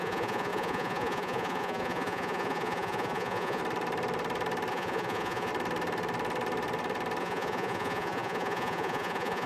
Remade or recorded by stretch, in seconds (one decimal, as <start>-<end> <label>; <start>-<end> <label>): 0.0-3.6 remade; 3.6-4.7 recorded; 4.7-5.5 remade; 5.5-7.2 recorded; 7.2-9.5 remade